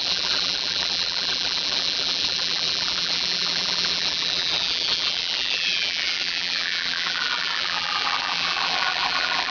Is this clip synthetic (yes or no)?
yes